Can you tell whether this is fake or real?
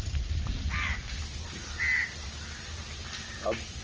real